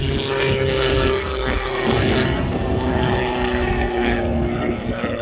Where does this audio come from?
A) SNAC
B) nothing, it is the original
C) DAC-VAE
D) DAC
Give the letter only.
A